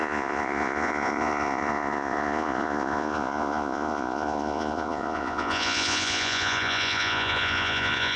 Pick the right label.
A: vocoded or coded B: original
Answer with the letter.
A